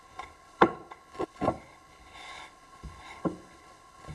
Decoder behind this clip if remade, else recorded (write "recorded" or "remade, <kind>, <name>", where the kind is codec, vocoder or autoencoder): remade, codec, HILCodec